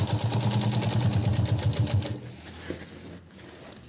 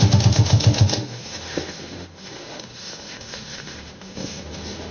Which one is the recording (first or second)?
first